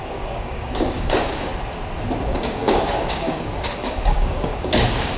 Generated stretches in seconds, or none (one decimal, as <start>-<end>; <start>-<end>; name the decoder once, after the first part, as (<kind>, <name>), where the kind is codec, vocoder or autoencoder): 0.0-1.5 (codec, DAC); 2.2-5.2